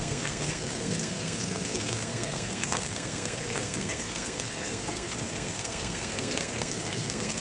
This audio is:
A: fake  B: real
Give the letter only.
A